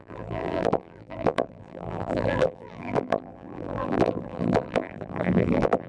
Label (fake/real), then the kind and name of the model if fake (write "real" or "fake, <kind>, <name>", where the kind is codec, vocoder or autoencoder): fake, vocoder, BigVGAN v2